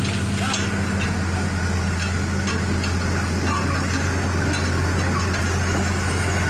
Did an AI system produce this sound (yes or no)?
no